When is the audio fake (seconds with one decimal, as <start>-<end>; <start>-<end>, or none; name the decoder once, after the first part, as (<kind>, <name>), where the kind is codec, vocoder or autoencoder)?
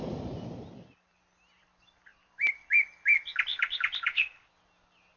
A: 2.1-2.7 (vocoder, BigVGAN v2); 3.5-4.2